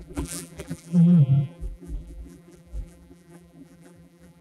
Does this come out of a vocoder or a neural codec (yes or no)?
yes